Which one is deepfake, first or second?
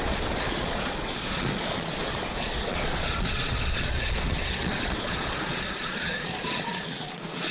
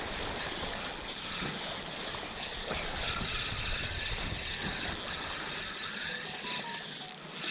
first